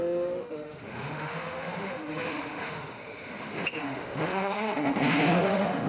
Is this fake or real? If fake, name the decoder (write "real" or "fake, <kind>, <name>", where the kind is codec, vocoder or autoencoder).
fake, autoencoder, DAC-VAE